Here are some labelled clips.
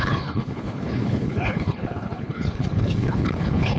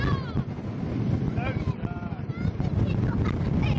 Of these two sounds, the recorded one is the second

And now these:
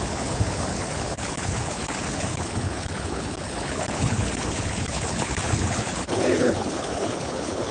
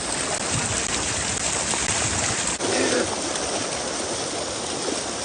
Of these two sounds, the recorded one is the second